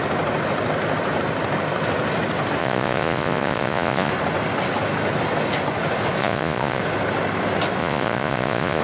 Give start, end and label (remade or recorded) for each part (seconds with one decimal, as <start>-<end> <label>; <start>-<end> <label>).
0.0-2.6 recorded; 2.6-4.1 remade; 4.1-6.2 recorded; 6.2-6.8 remade; 6.8-7.8 recorded; 7.8-8.8 remade